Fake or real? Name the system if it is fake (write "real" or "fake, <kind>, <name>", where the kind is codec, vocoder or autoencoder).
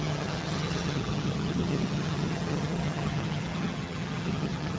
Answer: fake, vocoder, HiFi-GAN